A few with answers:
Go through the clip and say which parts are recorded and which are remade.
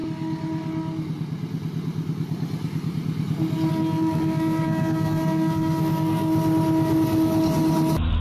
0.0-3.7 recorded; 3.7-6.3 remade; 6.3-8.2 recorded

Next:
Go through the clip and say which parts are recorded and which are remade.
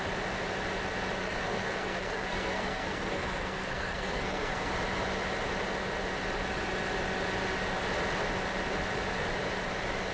0.0-1.2 recorded; 1.2-4.7 remade; 4.7-10.1 recorded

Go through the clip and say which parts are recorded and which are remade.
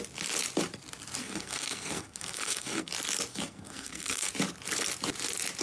0.0-1.2 recorded; 1.2-2.9 remade; 2.9-3.3 recorded; 3.3-4.3 remade; 4.3-5.6 recorded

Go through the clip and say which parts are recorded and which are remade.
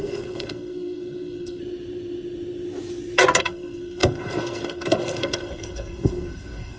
0.0-1.6 remade; 1.6-3.4 recorded; 3.4-6.8 remade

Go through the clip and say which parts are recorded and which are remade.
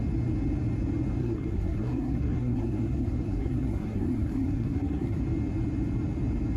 0.0-1.2 recorded; 1.2-5.2 remade; 5.2-6.6 recorded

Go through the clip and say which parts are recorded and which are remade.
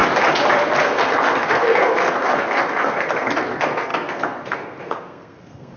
0.0-0.8 recorded; 0.8-5.8 remade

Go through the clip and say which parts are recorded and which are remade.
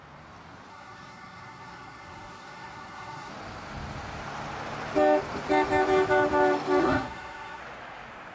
0.0-0.7 recorded; 0.7-3.3 remade; 3.3-6.8 recorded; 6.8-7.6 remade; 7.6-8.3 recorded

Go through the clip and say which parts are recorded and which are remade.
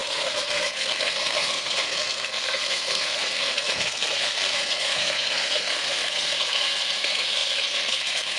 0.0-8.4 remade